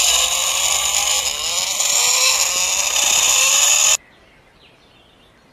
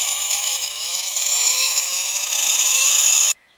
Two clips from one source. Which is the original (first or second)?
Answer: first